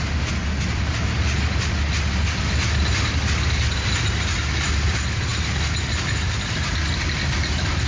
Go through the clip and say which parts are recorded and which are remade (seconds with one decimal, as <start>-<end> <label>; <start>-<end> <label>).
0.0-7.9 recorded